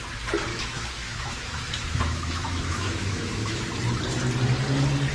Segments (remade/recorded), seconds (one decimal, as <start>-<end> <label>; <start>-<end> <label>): 0.0-0.5 recorded; 0.5-3.6 remade; 3.6-5.1 recorded